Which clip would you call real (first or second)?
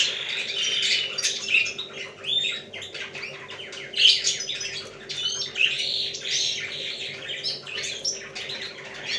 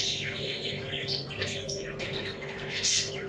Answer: first